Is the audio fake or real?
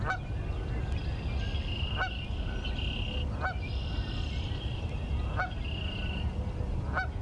real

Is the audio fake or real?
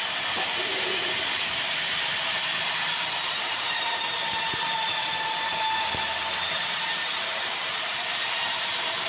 fake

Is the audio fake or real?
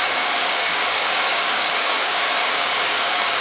fake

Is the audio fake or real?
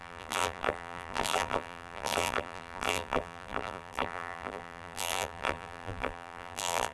fake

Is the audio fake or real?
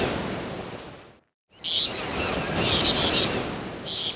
real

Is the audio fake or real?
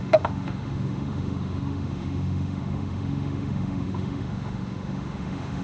fake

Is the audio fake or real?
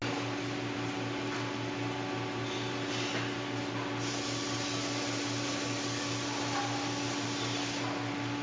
real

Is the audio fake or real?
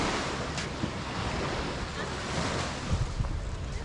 real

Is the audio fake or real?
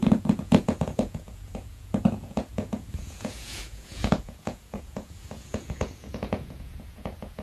fake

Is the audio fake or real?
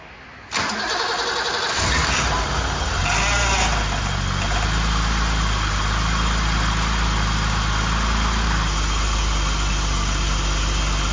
real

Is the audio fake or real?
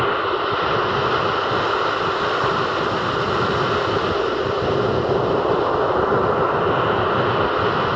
real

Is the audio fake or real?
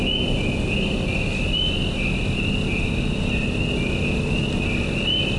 real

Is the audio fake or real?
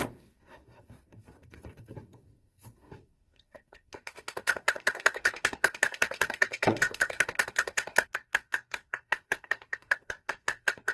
fake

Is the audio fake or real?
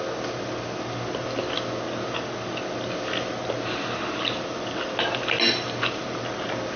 real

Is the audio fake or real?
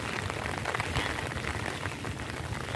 real